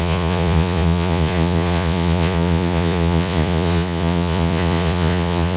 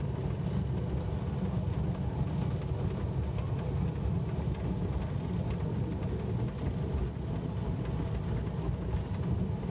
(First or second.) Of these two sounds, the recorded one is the second